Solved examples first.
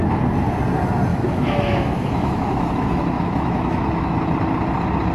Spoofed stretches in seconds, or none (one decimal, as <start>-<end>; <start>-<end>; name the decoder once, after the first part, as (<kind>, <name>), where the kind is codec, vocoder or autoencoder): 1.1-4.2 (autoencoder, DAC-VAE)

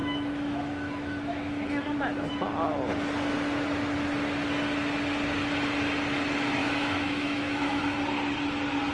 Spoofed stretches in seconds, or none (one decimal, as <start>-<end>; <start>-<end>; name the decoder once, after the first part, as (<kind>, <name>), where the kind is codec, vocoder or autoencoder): 0.0-2.3 (autoencoder, DAC-VAE); 6.6-7.8

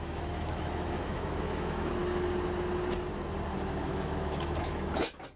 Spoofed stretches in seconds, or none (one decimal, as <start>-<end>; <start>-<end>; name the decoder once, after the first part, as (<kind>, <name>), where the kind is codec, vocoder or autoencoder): 0.0-2.0 (autoencoder, DAC-VAE); 3.9-5.4